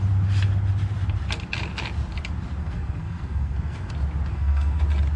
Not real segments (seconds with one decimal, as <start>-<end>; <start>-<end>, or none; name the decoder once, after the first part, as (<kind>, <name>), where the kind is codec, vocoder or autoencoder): 2.6-3.9 (codec, SNAC); 4.3-4.8

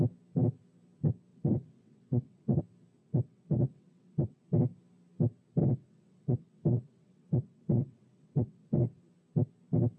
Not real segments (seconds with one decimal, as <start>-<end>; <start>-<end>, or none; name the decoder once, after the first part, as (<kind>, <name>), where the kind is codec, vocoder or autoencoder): 1.3-2.6 (vocoder, WaveNeXt); 3.0-4.4; 5.6-9.0

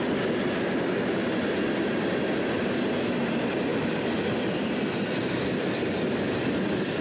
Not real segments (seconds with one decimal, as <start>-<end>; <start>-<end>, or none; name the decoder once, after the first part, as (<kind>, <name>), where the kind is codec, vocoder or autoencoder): none

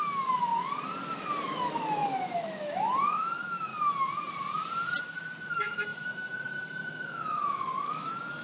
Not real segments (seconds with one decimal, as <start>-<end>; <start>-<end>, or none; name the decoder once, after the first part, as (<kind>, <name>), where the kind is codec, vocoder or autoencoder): 0.0-0.5 (autoencoder, DAC-VAE); 1.4-3.7; 5.5-8.4

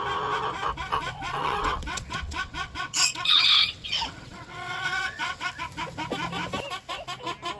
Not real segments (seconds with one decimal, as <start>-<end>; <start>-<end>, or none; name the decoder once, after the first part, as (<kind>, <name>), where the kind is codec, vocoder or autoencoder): 0.9-5.5 (vocoder, WaveNeXt)

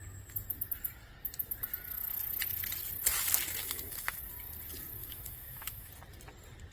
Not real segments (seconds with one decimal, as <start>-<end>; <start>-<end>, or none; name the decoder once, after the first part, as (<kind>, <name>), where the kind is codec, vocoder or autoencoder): 3.6-4.2 (autoencoder, DAC-VAE); 5.0-5.9

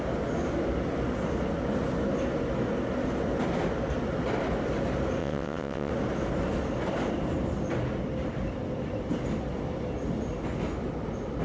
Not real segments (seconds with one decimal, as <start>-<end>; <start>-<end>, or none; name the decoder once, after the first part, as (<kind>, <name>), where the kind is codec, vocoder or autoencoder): 5.2-5.9 (vocoder, WaveNeXt)